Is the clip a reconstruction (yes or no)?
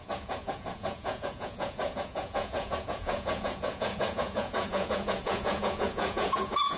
yes